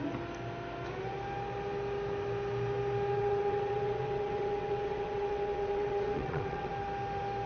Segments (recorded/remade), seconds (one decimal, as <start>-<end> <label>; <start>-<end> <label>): 0.0-3.1 recorded; 3.1-6.7 remade; 6.7-7.5 recorded